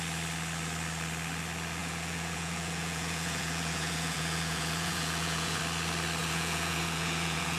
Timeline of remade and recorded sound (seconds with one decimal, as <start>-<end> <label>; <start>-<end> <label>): 0.0-1.8 recorded; 1.8-5.6 remade; 5.6-6.2 recorded; 6.2-7.6 remade

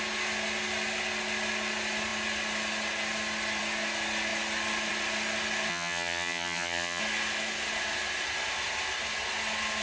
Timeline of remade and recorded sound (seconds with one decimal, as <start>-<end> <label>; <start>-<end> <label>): 0.0-5.7 recorded; 5.7-7.0 remade; 7.0-9.8 recorded

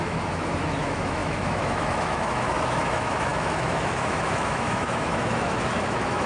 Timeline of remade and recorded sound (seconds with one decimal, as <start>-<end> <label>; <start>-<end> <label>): 0.0-6.3 remade

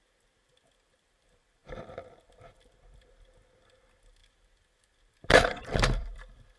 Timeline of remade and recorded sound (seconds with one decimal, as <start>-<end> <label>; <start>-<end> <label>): 0.0-1.6 recorded; 1.6-2.7 remade; 2.7-4.2 recorded; 4.2-6.6 remade

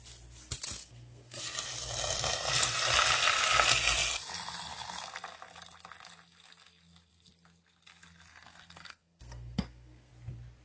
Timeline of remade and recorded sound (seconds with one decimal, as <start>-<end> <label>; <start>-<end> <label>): 0.0-0.8 recorded; 0.8-1.4 remade; 1.4-8.3 recorded; 8.3-10.1 remade; 10.1-10.6 recorded

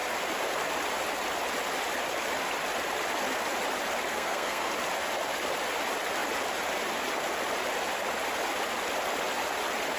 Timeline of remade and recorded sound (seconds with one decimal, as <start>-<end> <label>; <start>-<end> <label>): 0.0-4.1 recorded; 4.1-4.7 remade; 4.7-10.0 recorded

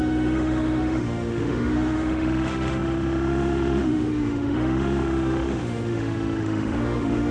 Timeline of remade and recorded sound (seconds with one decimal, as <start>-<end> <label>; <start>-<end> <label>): 0.0-7.3 remade